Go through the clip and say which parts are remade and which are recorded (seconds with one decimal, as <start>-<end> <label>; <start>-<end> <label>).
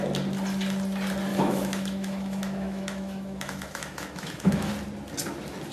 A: 0.0-1.3 recorded; 1.3-4.7 remade; 4.7-5.7 recorded